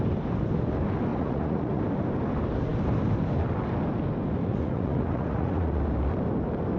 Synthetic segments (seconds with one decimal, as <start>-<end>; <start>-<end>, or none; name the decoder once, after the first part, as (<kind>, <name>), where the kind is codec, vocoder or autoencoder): 1.1-1.8 (vocoder, Vocos); 4.4-5.8